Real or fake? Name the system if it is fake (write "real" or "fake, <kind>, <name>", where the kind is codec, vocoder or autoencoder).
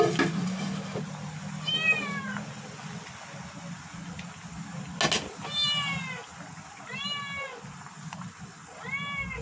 real